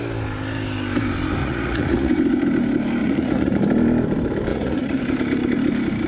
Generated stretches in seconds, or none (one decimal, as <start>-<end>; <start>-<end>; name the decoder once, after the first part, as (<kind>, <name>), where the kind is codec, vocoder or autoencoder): 1.4-2.1 (vocoder, Vocos); 3.0-3.6; 4.5-5.0